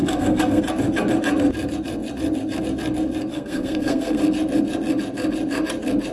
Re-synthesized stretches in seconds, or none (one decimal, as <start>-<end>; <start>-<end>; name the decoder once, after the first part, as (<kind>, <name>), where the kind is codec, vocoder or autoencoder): 0.0-0.6 (codec, SNAC); 3.3-4.2